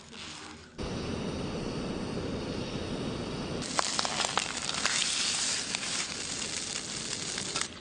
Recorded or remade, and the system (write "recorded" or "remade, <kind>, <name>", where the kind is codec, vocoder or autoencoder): recorded